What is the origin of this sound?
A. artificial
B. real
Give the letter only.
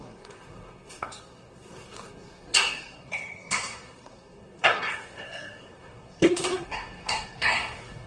A